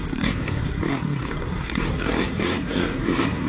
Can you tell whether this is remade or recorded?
remade